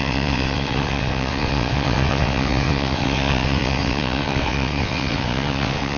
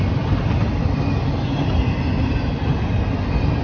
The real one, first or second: second